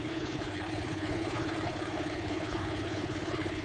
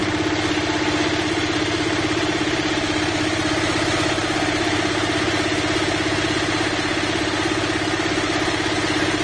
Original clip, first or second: second